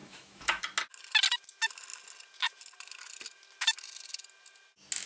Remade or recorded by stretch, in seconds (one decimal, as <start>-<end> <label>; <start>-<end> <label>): 0.0-0.6 remade; 0.6-5.1 recorded